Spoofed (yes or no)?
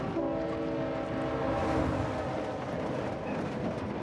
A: no